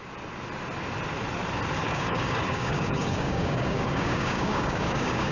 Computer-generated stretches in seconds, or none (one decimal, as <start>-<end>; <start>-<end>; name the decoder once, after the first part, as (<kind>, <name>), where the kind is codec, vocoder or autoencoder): 1.8-5.3 (codec, DAC)